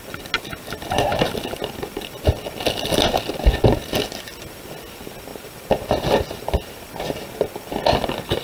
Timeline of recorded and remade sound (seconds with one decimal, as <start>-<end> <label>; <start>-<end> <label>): 0.0-8.4 recorded